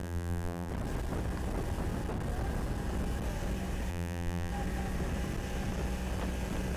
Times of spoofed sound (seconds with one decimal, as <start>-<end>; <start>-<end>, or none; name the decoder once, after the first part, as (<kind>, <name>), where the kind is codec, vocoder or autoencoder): 0.0-0.7 (vocoder, BigVGAN v2); 3.9-4.5